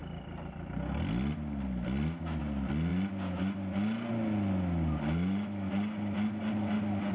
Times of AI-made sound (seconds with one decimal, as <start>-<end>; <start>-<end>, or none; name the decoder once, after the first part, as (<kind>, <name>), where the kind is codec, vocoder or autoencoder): none